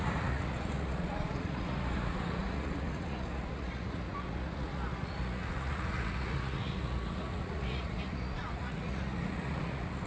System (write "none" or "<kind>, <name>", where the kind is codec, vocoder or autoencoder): vocoder, Vocos